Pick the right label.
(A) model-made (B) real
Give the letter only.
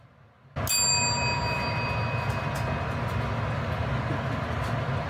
B